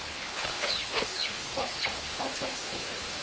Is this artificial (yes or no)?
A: yes